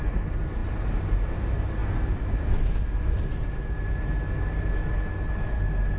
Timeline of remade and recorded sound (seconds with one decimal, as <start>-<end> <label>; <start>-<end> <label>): 0.0-6.0 recorded